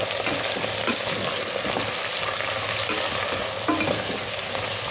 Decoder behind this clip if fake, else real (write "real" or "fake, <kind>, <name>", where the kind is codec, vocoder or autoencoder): real